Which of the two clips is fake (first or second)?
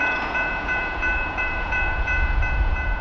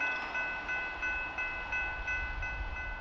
first